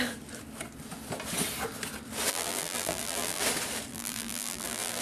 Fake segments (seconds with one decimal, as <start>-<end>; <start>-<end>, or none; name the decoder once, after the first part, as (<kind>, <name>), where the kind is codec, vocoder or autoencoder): 2.3-3.4 (vocoder, BigVGAN v2); 3.9-5.0